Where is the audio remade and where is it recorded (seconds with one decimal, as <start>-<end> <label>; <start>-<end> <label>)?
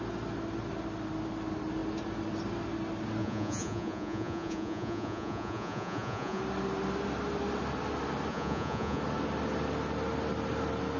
0.0-3.2 recorded; 3.2-6.4 remade; 6.4-8.3 recorded; 8.3-9.0 remade; 9.0-11.0 recorded